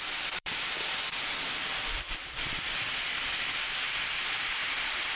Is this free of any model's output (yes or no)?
no